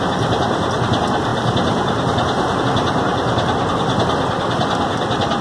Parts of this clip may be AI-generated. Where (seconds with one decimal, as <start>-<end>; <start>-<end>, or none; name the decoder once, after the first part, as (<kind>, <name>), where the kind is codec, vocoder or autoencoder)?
none